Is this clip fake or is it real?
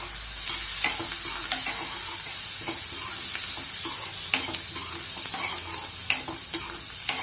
real